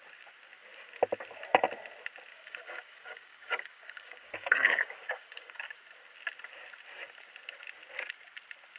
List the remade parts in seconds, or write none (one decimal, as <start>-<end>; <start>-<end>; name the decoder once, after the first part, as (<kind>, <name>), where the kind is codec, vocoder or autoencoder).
2.3-5.8 (codec, DAC)